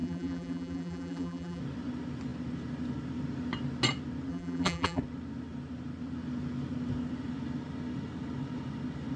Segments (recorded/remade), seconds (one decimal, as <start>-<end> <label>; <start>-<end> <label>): 0.0-1.6 remade; 1.6-4.3 recorded; 4.3-5.0 remade; 5.0-9.2 recorded